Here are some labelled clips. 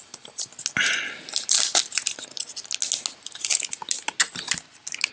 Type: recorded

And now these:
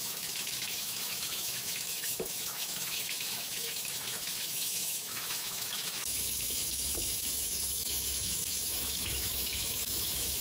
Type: remade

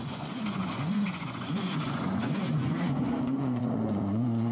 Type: remade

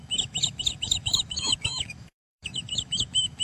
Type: remade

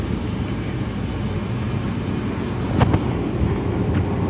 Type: recorded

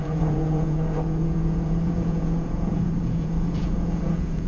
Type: remade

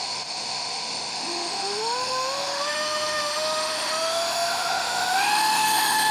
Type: remade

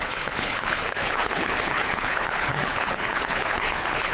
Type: remade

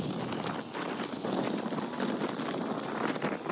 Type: recorded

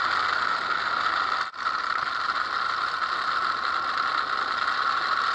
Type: recorded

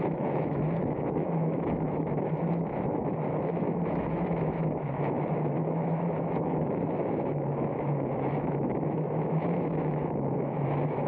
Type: remade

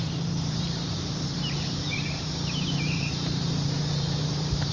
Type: remade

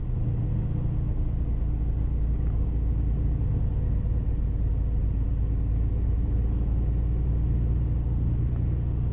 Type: recorded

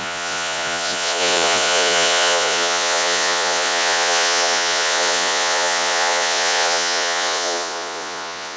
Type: remade